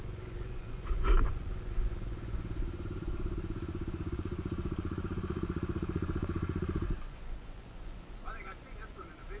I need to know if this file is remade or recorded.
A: remade